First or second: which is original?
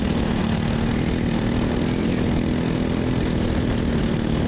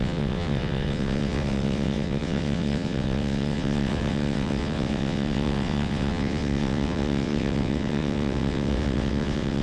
first